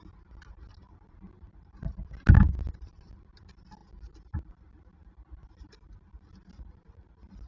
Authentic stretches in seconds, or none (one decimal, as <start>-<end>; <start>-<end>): 0.0-7.5